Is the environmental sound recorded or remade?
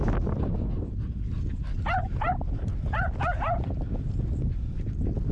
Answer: recorded